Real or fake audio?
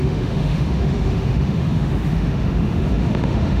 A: fake